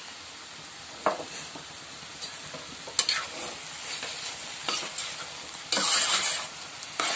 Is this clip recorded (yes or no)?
yes